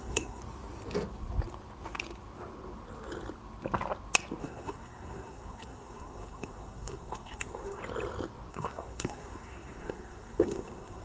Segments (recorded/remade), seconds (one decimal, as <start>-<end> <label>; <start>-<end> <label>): 0.0-0.4 remade; 0.4-4.4 recorded; 4.4-7.8 remade; 7.8-8.5 recorded; 8.5-11.0 remade